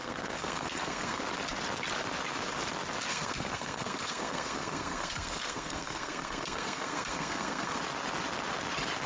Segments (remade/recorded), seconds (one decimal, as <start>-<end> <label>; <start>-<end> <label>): 0.0-1.2 remade; 1.2-3.1 recorded; 3.1-7.8 remade; 7.8-9.1 recorded